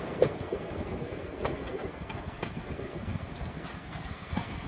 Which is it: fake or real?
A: fake